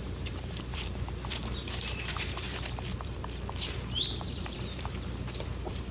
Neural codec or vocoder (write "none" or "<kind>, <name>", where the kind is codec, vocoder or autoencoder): vocoder, BigVGAN v2